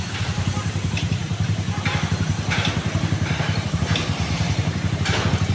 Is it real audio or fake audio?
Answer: fake